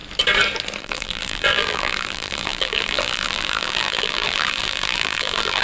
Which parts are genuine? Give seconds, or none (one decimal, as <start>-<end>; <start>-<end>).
0.0-0.8